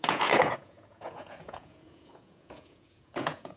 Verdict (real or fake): fake